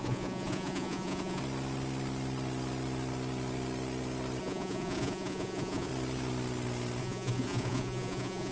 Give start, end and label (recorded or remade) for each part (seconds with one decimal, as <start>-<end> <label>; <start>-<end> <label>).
0.0-1.4 remade; 1.4-4.4 recorded; 4.4-5.9 remade; 5.9-7.0 recorded; 7.0-8.5 remade